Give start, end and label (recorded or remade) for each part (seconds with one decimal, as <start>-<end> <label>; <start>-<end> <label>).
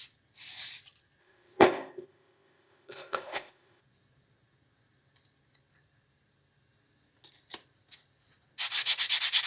0.0-1.2 recorded; 1.2-3.8 remade; 3.8-9.5 recorded